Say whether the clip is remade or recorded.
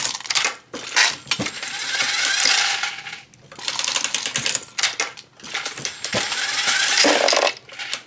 recorded